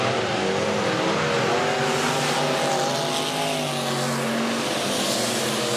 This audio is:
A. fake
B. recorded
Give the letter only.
B